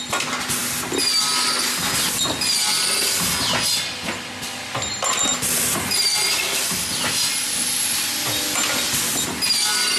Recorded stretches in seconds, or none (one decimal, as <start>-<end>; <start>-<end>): 0.0-10.0